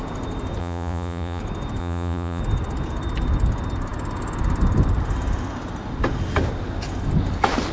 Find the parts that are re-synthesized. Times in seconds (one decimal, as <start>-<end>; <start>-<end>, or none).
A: 0.6-1.4; 1.8-2.4